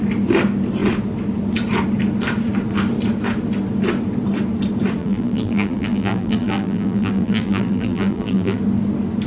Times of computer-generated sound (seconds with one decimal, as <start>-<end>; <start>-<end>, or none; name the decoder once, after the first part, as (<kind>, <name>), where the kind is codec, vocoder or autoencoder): 5.0-8.6 (vocoder, BigVGAN v2)